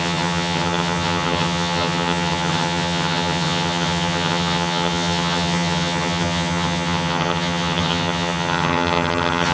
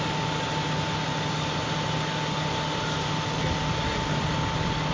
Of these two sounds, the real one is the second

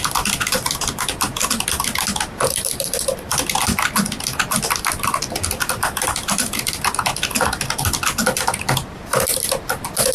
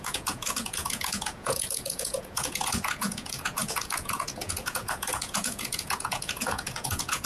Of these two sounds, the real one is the first